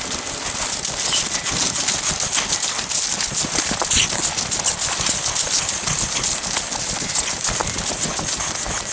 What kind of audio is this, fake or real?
real